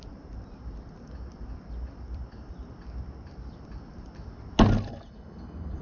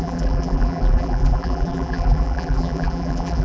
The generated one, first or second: second